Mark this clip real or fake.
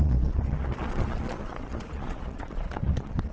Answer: fake